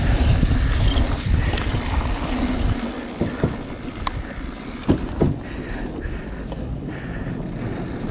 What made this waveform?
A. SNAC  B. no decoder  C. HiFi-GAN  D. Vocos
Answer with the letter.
B